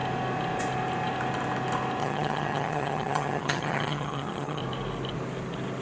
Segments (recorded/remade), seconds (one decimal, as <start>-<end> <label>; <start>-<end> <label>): 0.0-2.0 recorded; 2.0-4.6 remade; 4.6-5.8 recorded